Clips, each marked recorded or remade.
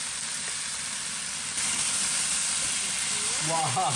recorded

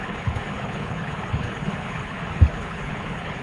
remade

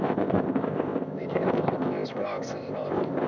remade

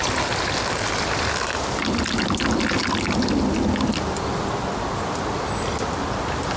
recorded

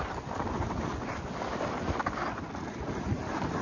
remade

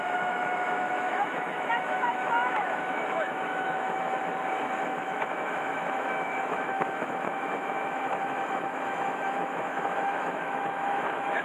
remade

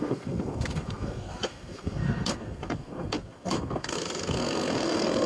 remade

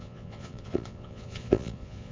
remade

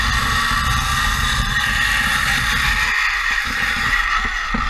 recorded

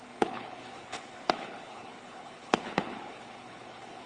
remade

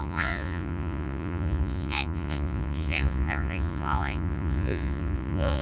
remade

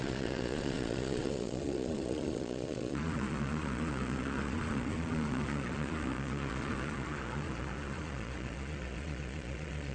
remade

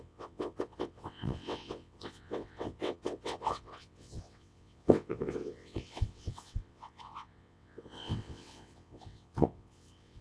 remade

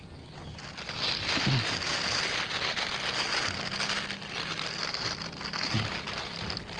recorded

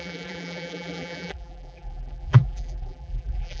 remade